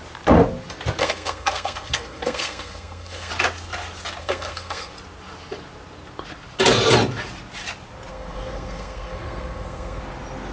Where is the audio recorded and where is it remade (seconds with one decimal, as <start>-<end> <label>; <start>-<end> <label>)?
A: 0.0-1.0 recorded; 1.0-3.3 remade; 3.3-4.2 recorded; 4.2-4.9 remade; 4.9-8.1 recorded; 8.1-10.0 remade; 10.0-10.5 recorded